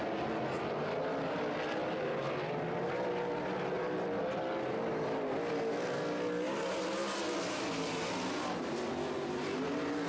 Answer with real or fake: real